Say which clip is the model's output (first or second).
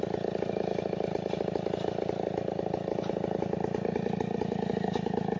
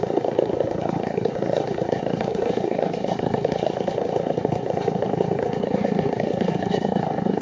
second